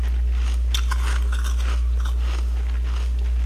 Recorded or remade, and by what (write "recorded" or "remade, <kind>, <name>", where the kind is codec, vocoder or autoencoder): recorded